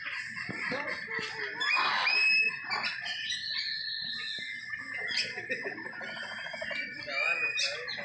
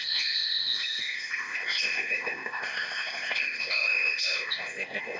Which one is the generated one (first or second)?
second